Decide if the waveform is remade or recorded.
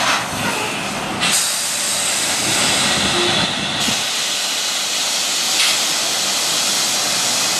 recorded